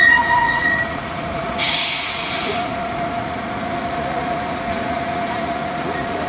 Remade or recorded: remade